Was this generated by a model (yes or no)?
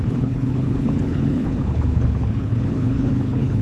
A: yes